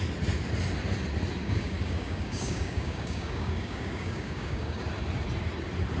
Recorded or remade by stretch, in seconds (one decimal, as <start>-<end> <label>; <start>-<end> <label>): 0.0-1.4 recorded; 1.4-4.8 remade; 4.8-6.0 recorded